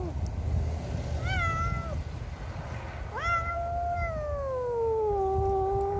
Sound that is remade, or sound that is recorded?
recorded